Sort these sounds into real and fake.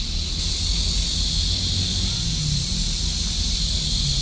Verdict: real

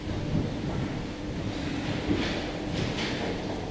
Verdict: real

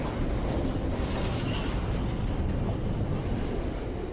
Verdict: real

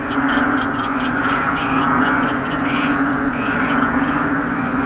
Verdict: fake